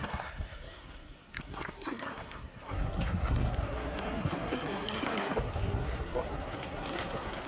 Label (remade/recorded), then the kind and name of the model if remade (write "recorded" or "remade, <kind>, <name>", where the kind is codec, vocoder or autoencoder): remade, codec, SNAC